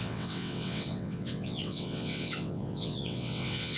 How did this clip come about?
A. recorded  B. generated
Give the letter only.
B